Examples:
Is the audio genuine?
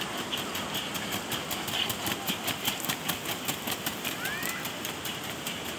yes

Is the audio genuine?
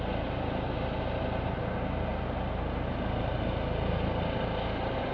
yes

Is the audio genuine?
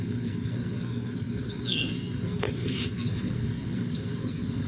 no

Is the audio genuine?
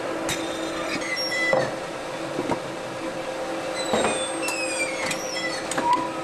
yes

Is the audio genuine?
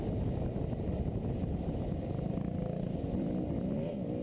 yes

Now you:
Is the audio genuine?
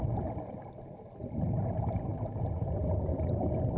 yes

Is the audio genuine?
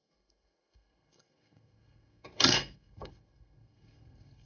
no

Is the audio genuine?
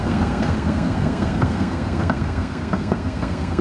no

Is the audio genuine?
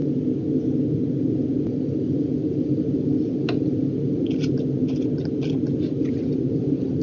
yes